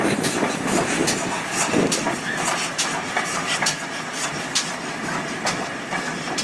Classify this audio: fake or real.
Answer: real